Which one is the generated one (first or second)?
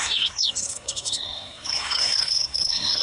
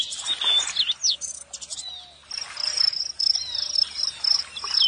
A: first